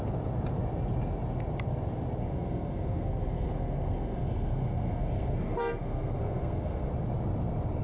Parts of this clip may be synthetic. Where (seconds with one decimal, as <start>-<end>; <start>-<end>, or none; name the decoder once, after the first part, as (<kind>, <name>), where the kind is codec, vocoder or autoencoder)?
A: 2.2-6.9 (codec, SNAC)